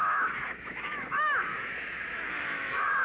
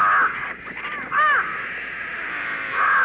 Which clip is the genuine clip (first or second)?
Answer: second